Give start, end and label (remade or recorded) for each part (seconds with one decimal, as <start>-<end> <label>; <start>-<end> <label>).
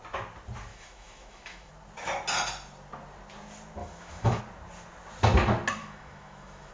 0.0-0.7 recorded; 0.7-1.7 remade; 1.7-3.8 recorded; 3.8-4.4 remade; 4.4-5.8 recorded; 5.8-6.7 remade